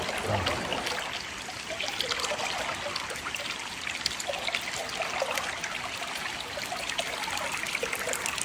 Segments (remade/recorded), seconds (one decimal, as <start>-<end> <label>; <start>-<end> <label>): 0.0-8.4 recorded